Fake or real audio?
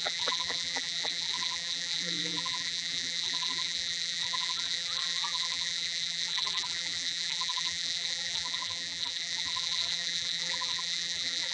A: fake